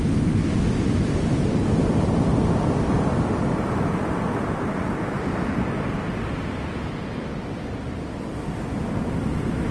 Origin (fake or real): real